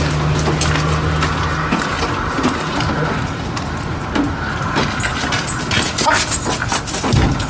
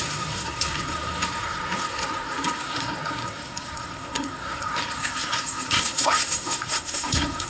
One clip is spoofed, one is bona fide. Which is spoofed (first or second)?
second